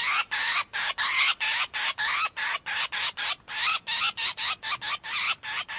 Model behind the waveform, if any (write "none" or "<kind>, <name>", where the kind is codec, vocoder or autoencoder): none